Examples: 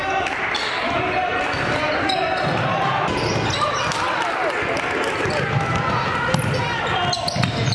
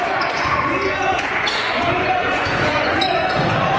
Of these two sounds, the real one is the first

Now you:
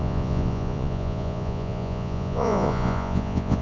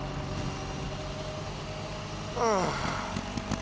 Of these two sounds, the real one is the second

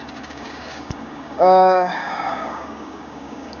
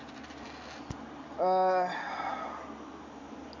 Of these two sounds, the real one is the second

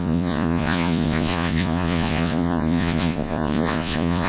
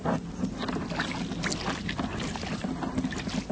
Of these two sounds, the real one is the second